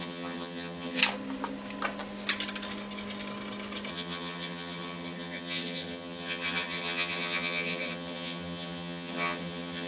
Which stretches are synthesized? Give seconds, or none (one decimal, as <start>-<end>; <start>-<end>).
0.0-1.0; 3.9-9.9